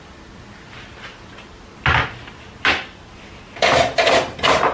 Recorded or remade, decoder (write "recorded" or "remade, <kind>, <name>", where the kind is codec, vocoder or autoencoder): recorded